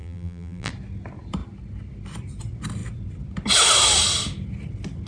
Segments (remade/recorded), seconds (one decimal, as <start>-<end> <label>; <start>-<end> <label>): 0.0-0.7 remade; 0.7-5.1 recorded